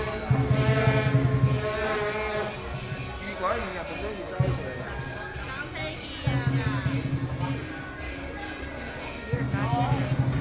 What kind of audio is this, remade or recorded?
recorded